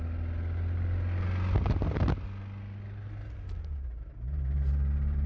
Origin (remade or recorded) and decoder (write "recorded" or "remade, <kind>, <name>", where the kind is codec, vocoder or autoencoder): recorded